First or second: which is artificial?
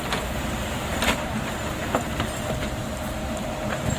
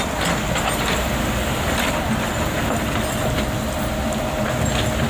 first